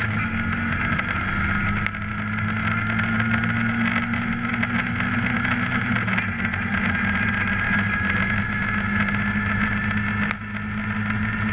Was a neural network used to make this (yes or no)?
no